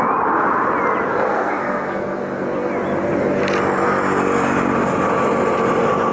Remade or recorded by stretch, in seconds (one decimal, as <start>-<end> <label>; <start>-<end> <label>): 0.0-1.1 recorded; 1.1-2.7 remade; 2.7-6.1 recorded